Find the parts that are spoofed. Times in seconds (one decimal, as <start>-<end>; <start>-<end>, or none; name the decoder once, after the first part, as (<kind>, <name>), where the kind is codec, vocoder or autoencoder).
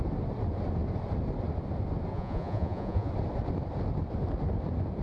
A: 2.1-3.1 (vocoder, Vocos)